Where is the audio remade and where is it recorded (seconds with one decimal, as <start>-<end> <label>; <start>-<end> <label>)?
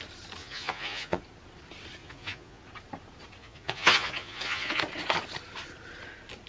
0.0-0.4 recorded; 0.4-1.2 remade; 1.2-2.0 recorded; 2.0-2.6 remade; 2.6-3.4 recorded; 3.4-4.8 remade; 4.8-6.5 recorded